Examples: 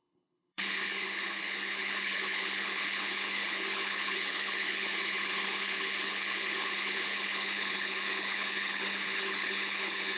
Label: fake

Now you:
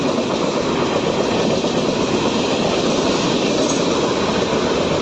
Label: real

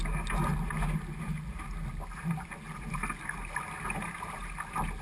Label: real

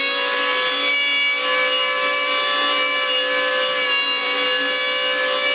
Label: real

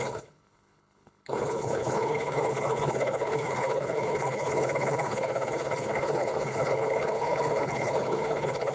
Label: fake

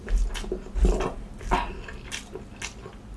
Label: real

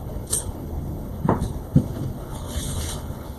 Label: fake